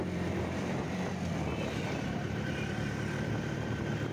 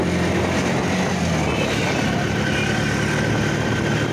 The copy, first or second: first